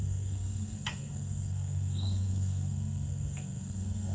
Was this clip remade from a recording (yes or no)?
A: yes